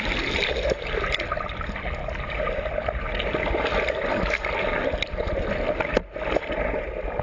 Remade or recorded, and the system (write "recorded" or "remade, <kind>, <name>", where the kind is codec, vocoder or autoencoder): recorded